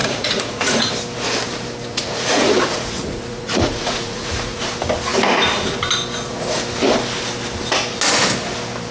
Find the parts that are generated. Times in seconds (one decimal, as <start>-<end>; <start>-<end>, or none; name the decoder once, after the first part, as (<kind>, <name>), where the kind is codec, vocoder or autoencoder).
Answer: 0.0-0.9 (vocoder, Vocos); 1.9-4.6